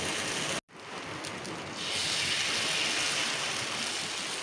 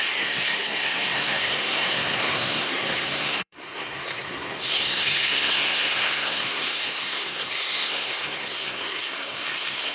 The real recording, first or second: first